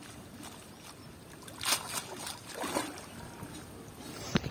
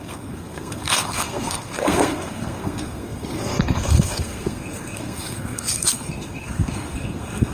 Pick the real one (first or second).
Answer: first